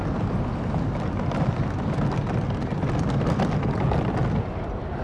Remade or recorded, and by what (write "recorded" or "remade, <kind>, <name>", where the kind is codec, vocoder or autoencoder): recorded